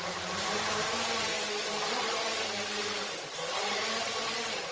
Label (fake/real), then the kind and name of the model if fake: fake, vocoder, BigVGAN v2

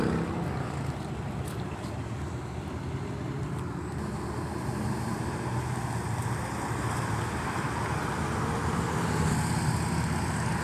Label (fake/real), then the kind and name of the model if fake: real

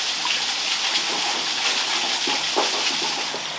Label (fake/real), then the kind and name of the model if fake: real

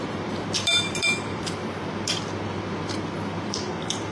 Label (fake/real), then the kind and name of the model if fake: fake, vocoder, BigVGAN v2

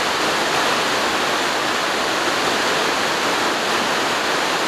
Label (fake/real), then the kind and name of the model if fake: real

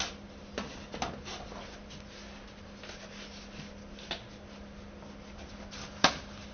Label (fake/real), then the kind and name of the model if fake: real